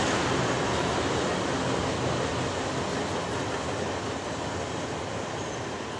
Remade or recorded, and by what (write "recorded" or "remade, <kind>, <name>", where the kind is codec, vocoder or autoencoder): recorded